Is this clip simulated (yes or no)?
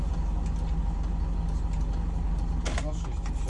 no